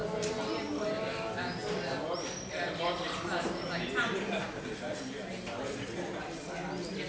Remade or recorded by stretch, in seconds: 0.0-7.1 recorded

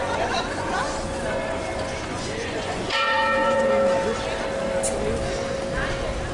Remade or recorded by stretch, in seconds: 0.0-3.7 remade; 3.7-6.3 recorded

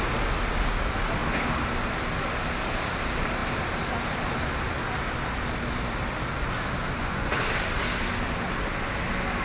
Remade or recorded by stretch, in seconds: 0.0-7.0 recorded; 7.0-7.5 remade; 7.5-9.4 recorded